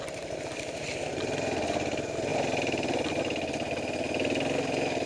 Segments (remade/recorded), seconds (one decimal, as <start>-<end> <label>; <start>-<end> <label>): 0.0-2.3 recorded; 2.3-3.2 remade; 3.2-5.1 recorded